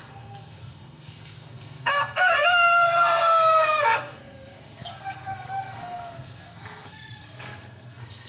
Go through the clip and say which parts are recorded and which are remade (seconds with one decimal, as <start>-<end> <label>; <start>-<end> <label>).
0.0-8.3 remade